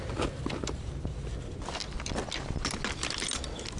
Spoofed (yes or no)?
no